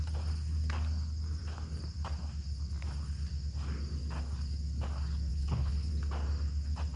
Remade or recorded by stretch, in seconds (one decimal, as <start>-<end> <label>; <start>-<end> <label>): 0.0-5.3 recorded; 5.3-5.9 remade; 5.9-7.0 recorded

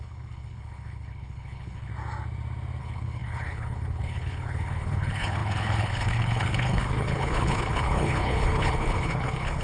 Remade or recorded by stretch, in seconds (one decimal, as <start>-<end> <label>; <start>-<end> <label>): 0.0-1.9 remade; 1.9-2.8 recorded; 2.8-9.6 remade

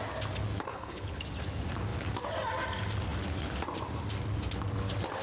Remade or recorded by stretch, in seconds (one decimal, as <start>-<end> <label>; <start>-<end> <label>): 0.0-0.7 recorded; 0.7-1.2 remade; 1.2-5.2 recorded